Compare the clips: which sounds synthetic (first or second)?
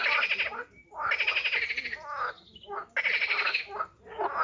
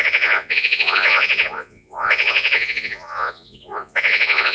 second